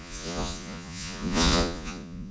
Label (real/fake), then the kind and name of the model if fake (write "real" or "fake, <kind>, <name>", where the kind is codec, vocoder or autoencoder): fake, vocoder, Vocos